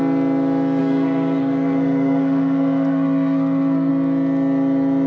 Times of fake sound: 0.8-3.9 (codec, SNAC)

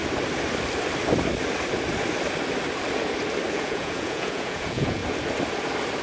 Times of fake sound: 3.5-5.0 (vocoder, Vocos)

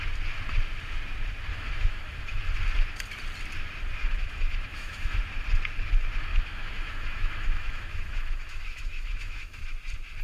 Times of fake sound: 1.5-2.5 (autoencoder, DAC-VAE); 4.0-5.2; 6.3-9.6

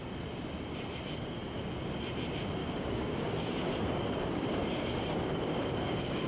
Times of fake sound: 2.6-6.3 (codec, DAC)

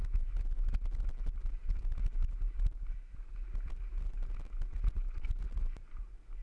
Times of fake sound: none